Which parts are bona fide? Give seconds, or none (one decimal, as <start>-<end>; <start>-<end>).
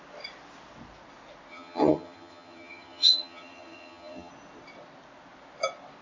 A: 0.0-1.5; 4.3-6.0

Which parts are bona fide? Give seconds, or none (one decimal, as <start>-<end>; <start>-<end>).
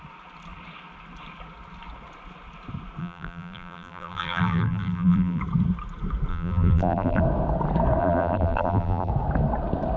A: 0.0-3.0; 5.4-6.3; 7.2-8.0; 9.1-10.0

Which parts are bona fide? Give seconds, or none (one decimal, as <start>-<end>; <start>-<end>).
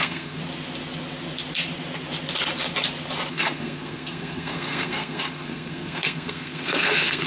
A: 0.4-3.3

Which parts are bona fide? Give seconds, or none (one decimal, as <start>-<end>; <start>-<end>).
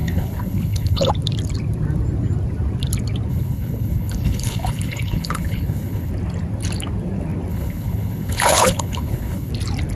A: 1.1-3.3; 6.1-7.5; 9.5-10.0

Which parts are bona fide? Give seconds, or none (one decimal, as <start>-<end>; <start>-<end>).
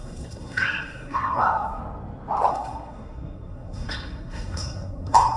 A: 1.8-2.5